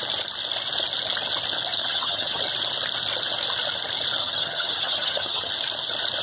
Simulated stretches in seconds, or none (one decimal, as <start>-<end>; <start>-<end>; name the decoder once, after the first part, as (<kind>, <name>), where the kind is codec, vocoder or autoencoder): 1.8-2.4 (vocoder, HiFi-GAN); 4.2-5.5